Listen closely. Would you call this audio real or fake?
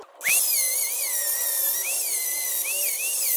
real